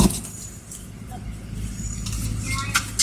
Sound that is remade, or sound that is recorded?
recorded